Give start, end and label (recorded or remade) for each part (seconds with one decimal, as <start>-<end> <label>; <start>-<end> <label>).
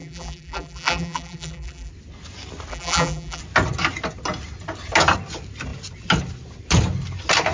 0.0-1.9 remade; 1.9-2.7 recorded; 2.7-3.4 remade; 3.4-7.5 recorded